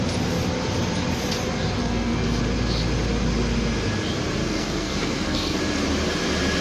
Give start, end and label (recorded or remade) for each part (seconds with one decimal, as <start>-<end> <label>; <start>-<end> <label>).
0.0-1.8 recorded; 1.8-2.4 remade; 2.4-4.4 recorded; 4.4-5.6 remade; 5.6-6.6 recorded